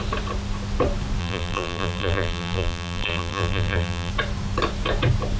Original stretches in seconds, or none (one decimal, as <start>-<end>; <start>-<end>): 0.0-1.2; 4.1-5.4